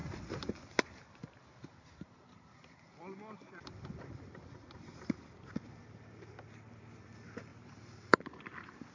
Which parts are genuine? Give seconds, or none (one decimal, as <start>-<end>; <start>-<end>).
0.5-1.2; 3.0-7.5; 8.2-8.9